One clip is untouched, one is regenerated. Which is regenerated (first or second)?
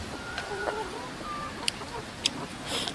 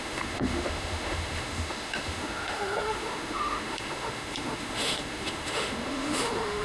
second